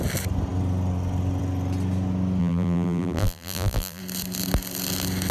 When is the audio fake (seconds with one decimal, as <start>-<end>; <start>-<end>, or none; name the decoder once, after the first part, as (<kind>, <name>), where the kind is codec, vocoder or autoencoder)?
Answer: 2.4-4.0 (vocoder, BigVGAN v2)

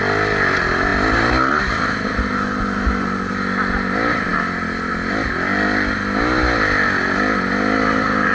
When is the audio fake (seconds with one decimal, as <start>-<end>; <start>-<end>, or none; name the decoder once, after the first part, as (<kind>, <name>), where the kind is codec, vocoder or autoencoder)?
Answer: none